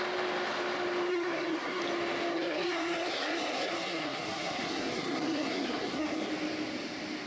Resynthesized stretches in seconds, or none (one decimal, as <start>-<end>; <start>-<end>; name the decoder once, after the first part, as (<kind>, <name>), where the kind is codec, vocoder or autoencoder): 1.1-1.8 (codec, SNAC); 2.3-6.3